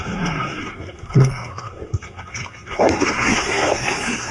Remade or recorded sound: remade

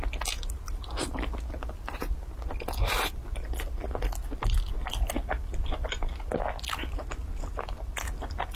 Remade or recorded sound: recorded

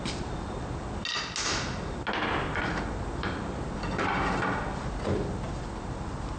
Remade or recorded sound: recorded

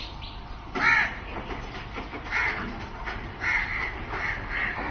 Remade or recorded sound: recorded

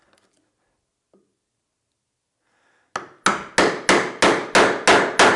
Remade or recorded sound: recorded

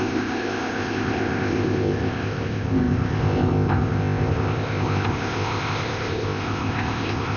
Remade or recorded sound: remade